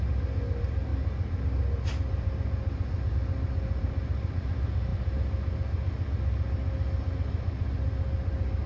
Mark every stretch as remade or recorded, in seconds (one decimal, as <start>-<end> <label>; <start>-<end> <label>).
0.0-8.7 recorded